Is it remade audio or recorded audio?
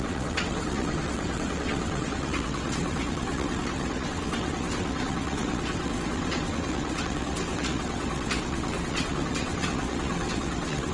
remade